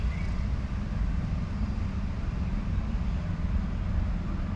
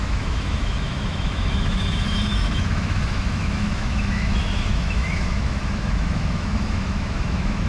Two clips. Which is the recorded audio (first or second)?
first